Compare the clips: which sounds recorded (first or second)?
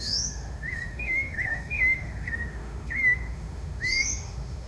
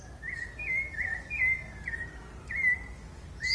second